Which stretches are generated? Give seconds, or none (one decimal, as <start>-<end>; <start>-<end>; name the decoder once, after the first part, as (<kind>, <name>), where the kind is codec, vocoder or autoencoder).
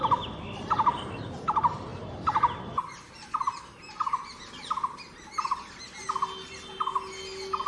none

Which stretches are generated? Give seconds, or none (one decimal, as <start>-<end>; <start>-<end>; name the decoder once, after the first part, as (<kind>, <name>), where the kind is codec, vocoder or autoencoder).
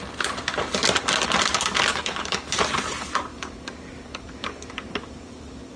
1.9-2.5 (codec, DAC); 3.3-5.8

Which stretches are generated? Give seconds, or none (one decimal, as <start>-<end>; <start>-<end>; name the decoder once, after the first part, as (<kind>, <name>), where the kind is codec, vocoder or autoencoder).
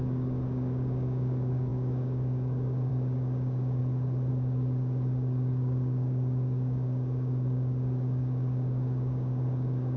0.0-3.8 (codec, DAC); 4.3-10.0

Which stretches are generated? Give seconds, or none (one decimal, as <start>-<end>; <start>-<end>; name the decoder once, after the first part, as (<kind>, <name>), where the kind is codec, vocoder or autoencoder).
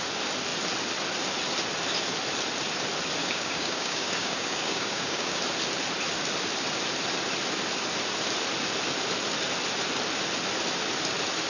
3.2-5.4 (codec, DAC)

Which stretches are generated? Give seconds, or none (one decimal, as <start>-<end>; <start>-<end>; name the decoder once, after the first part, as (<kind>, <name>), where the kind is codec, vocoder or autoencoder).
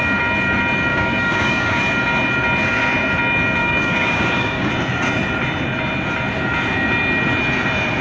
0.9-1.8 (codec, DAC); 3.6-4.7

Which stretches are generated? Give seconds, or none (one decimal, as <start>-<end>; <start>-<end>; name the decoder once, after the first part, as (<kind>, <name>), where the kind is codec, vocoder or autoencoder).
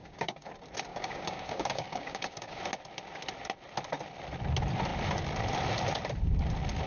0.0-0.5 (codec, DAC); 0.9-2.6